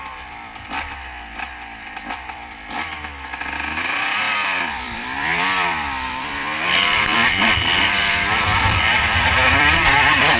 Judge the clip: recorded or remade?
remade